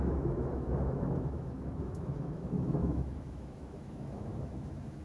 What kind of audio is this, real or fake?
fake